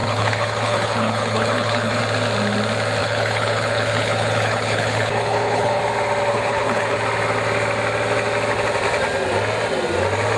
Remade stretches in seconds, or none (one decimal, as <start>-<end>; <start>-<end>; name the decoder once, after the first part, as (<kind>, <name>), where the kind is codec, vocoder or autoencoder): 0.0-2.0 (codec, HILCodec); 3.0-5.8; 6.3-7.0